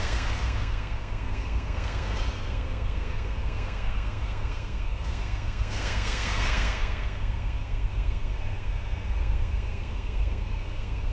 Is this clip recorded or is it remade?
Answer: remade